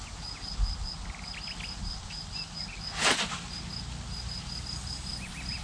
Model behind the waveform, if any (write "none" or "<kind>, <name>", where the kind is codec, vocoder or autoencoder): none